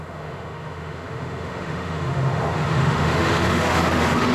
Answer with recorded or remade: remade